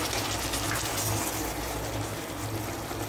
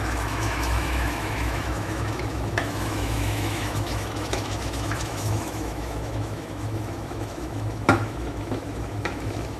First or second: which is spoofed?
second